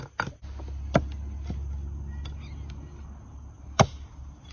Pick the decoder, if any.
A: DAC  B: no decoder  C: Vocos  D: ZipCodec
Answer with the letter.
B